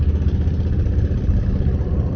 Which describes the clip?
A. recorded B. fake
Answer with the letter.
B